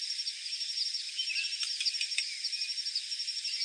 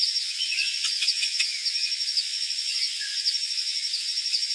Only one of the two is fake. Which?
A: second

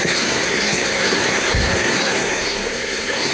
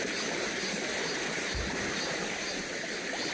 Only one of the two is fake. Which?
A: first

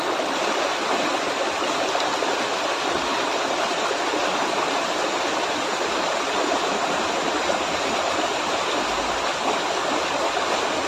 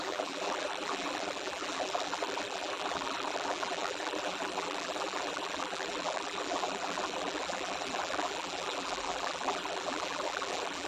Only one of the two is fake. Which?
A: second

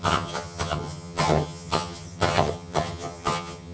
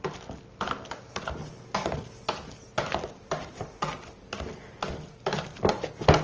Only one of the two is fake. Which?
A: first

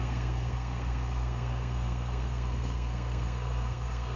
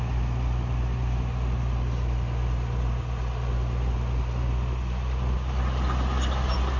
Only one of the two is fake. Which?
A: first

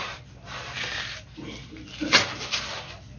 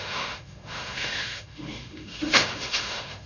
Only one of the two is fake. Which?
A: second